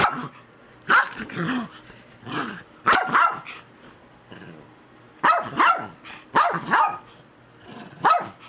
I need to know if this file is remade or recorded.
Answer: recorded